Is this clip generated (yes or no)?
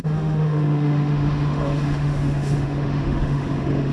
yes